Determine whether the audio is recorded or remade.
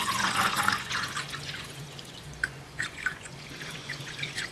remade